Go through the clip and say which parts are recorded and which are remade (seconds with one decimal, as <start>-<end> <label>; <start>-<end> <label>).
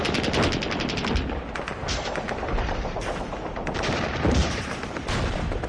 0.0-4.4 recorded; 4.4-5.1 remade; 5.1-5.7 recorded